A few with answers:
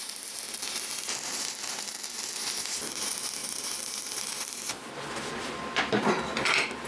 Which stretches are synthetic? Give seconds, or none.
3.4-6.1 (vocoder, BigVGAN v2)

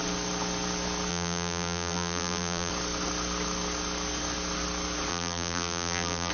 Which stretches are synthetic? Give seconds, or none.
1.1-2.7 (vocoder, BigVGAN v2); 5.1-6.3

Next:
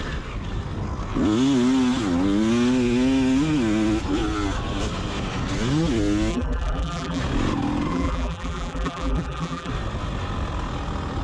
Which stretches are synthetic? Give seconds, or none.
6.3-7.2 (vocoder, BigVGAN v2); 7.9-9.7

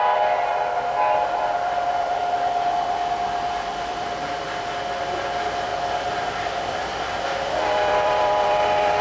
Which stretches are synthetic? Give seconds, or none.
0.0-0.5 (vocoder, BigVGAN v2); 1.4-2.2; 3.5-5.7; 6.4-9.0